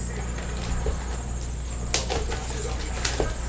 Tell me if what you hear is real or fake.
real